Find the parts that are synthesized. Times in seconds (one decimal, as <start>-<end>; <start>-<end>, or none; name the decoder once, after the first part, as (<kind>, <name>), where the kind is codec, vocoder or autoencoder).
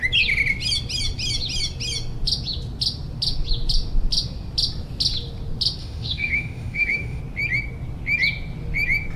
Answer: 5.8-7.2 (autoencoder, DAC-VAE)